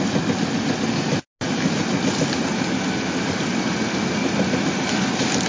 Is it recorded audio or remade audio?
recorded